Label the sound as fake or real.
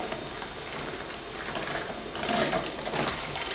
real